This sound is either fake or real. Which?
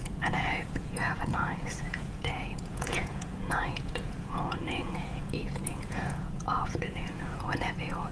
fake